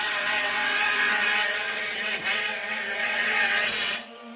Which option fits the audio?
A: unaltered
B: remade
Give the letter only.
B